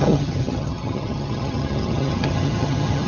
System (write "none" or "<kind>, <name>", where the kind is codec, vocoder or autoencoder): vocoder, HiFi-GAN